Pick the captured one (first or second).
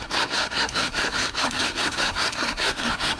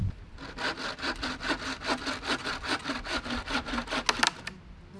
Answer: second